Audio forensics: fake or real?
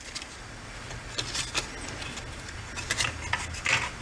real